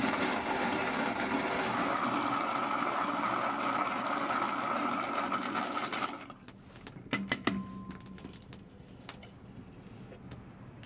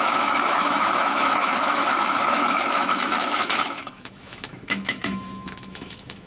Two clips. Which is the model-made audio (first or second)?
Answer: second